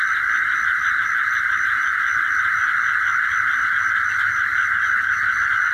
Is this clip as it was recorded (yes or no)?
yes